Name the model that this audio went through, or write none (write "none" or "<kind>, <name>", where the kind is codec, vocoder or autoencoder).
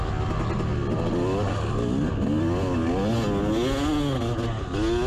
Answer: none